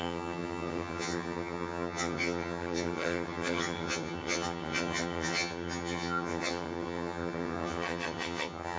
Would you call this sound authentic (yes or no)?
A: no